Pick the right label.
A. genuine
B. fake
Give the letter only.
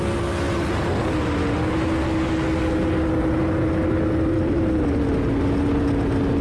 A